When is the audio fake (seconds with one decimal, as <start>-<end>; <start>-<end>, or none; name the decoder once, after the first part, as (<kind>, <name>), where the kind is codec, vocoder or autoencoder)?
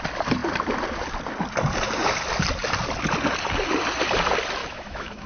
4.6-5.3 (autoencoder, DAC-VAE)